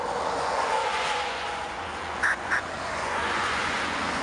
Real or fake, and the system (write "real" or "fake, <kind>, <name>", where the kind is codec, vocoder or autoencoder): fake, vocoder, Vocos